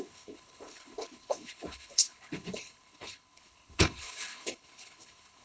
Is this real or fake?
fake